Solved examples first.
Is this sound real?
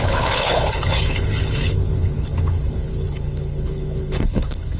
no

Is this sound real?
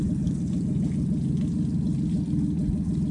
yes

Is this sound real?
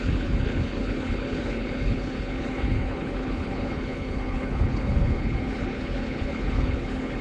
no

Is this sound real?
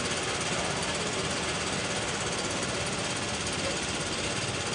yes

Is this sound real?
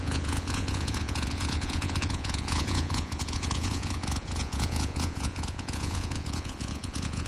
no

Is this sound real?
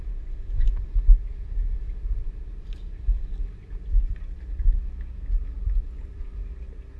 yes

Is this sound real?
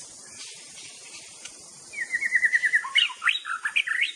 yes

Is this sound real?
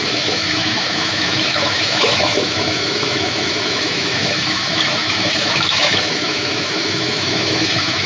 no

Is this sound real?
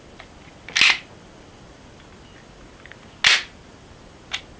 yes